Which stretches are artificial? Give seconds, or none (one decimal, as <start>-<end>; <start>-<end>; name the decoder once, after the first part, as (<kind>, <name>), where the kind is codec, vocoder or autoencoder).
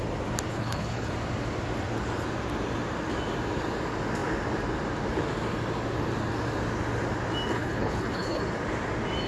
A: 0.5-1.1 (codec, HILCodec); 7.5-8.4